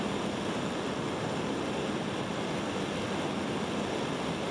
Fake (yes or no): no